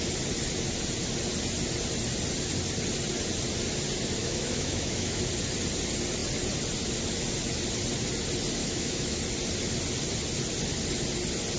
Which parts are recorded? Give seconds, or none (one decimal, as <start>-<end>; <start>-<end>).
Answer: 0.0-4.2; 5.2-8.6; 9.2-11.6